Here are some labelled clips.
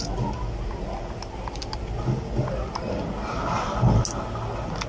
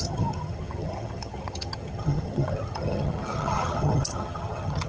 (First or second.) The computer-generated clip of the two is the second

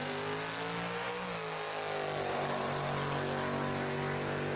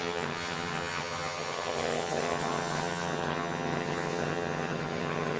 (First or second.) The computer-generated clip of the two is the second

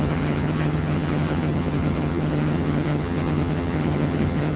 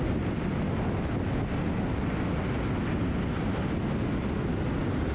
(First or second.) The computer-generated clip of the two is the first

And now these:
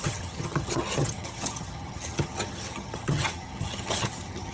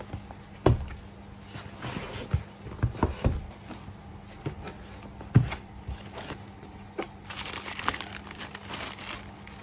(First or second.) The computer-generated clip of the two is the first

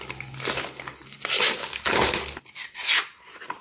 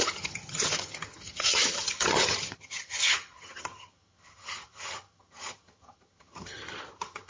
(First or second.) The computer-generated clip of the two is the second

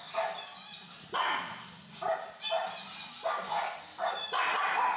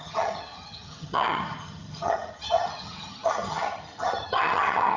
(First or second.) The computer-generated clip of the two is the second